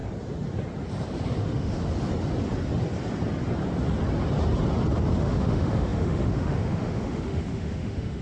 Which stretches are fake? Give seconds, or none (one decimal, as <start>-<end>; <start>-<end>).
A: 1.4-1.8; 5.2-8.2